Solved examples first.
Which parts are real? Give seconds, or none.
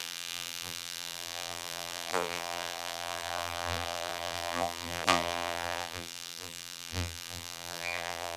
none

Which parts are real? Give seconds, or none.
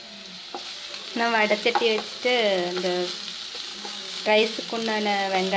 0.0-3.7; 4.6-5.6